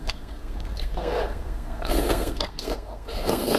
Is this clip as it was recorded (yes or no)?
no